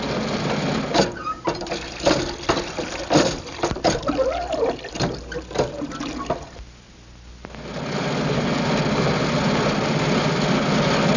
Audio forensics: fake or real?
real